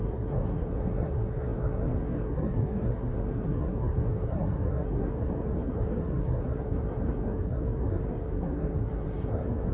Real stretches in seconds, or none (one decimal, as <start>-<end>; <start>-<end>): none